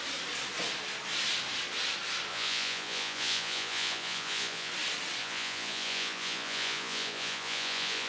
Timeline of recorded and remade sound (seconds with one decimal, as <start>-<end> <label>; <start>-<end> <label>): 0.0-2.3 recorded; 2.3-4.7 remade; 4.7-5.2 recorded; 5.2-8.1 remade